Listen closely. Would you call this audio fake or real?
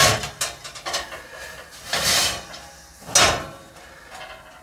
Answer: real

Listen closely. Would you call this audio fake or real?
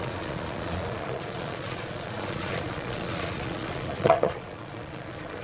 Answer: fake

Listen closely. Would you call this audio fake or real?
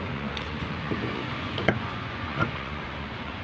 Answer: fake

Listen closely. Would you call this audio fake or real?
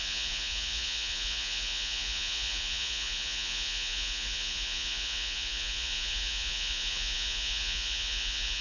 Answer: fake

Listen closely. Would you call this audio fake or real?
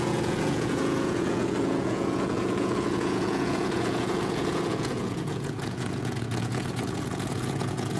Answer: fake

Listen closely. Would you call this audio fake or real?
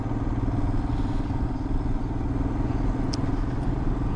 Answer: real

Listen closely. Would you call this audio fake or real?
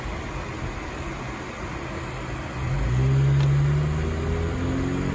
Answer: real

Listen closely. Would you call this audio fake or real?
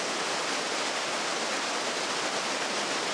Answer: real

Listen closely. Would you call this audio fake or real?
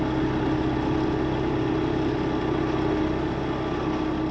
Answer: real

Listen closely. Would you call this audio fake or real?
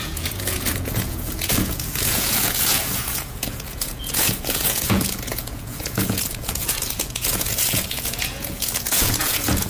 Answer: fake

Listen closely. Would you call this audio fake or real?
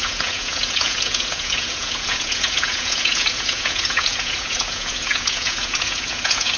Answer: fake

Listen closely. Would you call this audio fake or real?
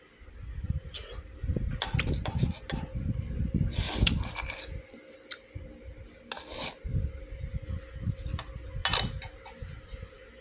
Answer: real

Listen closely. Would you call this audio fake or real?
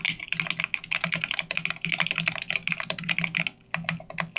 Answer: real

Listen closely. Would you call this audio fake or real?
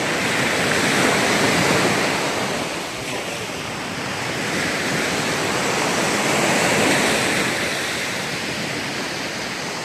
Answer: real